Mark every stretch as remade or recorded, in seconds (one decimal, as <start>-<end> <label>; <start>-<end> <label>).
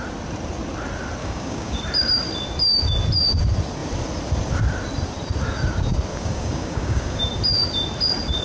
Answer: 0.0-1.2 recorded; 1.2-1.8 remade; 1.8-6.1 recorded; 6.1-7.2 remade; 7.2-8.4 recorded